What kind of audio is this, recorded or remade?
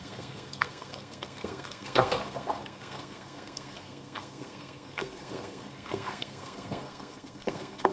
remade